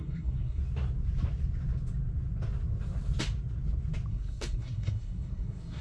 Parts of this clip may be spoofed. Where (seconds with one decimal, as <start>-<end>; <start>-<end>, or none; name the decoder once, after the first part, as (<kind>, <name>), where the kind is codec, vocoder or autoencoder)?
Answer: 0.0-0.6 (codec, SNAC); 4.1-5.8